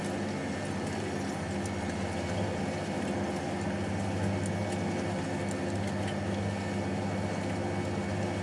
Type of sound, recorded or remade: recorded